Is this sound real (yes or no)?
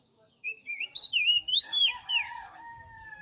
no